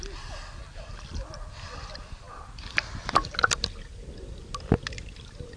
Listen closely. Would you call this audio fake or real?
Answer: real